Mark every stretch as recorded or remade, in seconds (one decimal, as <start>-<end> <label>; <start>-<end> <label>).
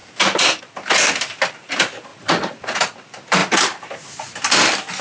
0.0-2.1 recorded; 2.1-2.8 remade; 2.8-5.0 recorded